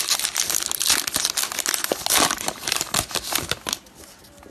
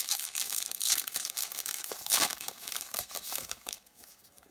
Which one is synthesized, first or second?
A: second